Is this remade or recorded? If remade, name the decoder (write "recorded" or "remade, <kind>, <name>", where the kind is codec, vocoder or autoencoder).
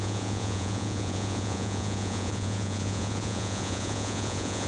remade, vocoder, Vocos